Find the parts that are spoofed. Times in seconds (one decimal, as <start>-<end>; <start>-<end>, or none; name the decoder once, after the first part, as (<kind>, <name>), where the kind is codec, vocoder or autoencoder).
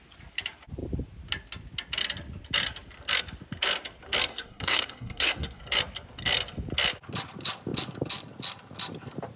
4.3-5.6 (codec, SNAC)